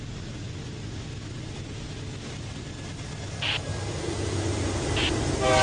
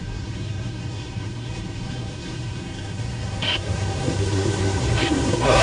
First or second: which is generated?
second